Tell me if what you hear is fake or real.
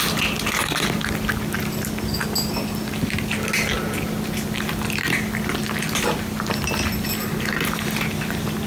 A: real